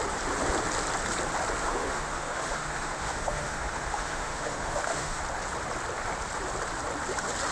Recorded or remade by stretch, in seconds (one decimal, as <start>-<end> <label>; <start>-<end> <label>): 0.0-1.6 recorded; 1.6-5.2 remade; 5.2-7.5 recorded

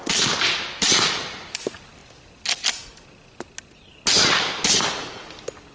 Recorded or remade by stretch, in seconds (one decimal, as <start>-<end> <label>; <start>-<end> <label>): 0.0-5.7 recorded

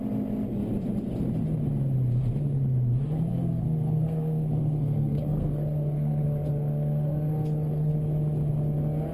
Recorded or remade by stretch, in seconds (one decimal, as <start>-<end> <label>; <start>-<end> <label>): 0.0-3.3 recorded; 3.3-7.9 remade; 7.9-9.1 recorded

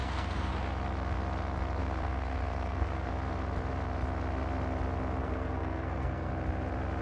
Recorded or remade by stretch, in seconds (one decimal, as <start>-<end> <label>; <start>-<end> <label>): 0.0-0.5 remade; 0.5-1.8 recorded; 1.8-3.1 remade; 3.1-5.2 recorded; 5.2-6.3 remade; 6.3-7.0 recorded